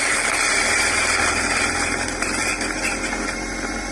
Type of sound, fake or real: real